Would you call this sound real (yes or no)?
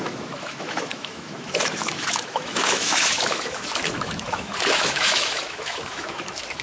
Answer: no